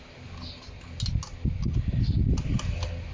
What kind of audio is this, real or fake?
real